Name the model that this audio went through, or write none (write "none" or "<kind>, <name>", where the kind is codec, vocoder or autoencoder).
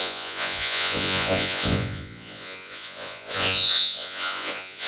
vocoder, Vocos